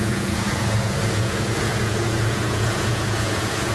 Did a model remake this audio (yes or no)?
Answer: yes